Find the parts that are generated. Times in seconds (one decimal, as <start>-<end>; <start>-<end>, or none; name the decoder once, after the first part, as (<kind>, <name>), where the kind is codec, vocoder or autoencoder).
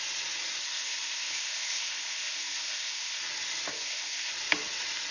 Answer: 0.6-3.2 (codec, ZipCodec); 3.7-4.3